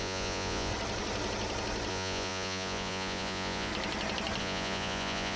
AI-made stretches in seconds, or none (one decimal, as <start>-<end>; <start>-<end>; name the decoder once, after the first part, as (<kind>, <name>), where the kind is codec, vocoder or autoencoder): 0.0-0.7 (vocoder, Vocos); 1.9-3.7; 4.4-5.4